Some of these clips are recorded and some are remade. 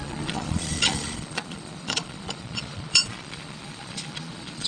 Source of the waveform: remade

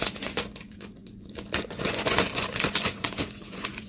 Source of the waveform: remade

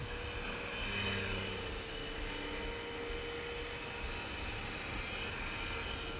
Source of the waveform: recorded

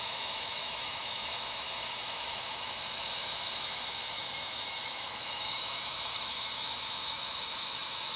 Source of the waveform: remade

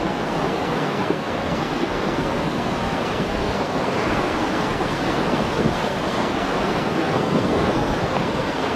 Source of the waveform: remade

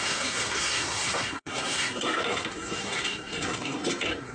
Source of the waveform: remade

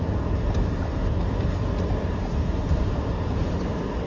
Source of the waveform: recorded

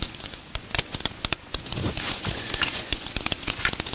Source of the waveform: remade